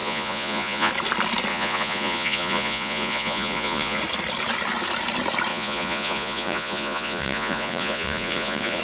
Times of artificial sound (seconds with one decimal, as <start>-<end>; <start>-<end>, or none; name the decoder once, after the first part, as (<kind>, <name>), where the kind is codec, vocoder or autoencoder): 0.0-0.9 (vocoder, Vocos); 1.5-4.0; 5.5-8.8